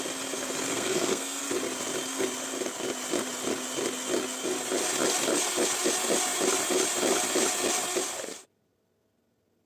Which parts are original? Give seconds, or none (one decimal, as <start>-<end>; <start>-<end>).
0.0-0.7; 1.4-9.7